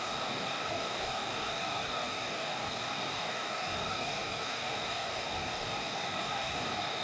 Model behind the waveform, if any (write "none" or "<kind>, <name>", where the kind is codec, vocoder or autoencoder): codec, DAC